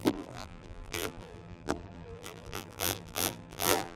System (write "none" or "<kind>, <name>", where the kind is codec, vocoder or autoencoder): vocoder, BigVGAN v2